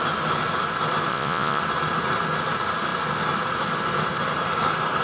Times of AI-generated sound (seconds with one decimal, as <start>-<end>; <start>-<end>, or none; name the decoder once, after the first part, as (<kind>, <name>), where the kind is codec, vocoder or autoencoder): 1.1-1.6 (vocoder, Vocos)